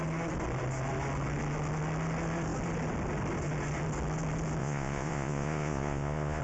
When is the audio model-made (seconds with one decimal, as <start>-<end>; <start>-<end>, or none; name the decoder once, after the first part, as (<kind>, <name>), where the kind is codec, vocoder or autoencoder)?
4.6-6.4 (vocoder, Vocos)